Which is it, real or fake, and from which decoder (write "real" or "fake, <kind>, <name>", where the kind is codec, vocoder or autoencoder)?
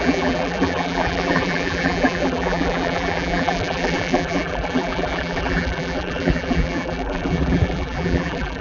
fake, vocoder, BigVGAN v2